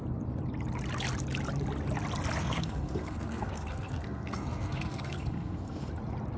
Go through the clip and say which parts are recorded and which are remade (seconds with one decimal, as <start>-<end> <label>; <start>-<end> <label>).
0.0-2.4 recorded; 2.4-5.9 remade; 5.9-6.4 recorded